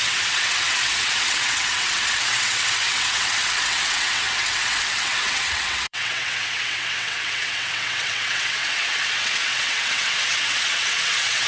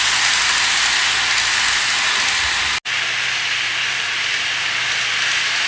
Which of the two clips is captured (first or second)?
second